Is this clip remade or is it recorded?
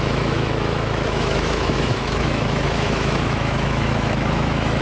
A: remade